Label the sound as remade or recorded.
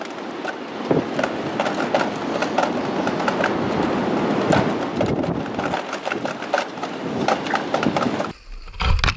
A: recorded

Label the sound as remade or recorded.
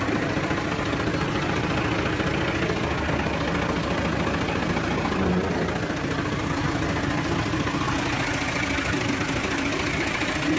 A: recorded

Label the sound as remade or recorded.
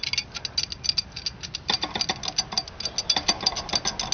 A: recorded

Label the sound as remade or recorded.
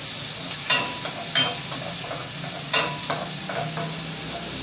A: recorded